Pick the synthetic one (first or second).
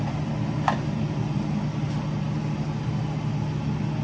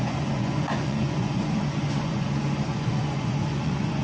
second